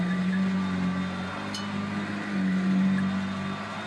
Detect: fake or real real